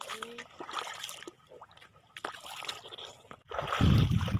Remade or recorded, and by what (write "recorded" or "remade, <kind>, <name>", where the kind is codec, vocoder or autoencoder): recorded